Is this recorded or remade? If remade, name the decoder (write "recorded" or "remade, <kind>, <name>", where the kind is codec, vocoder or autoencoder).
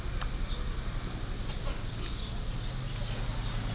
recorded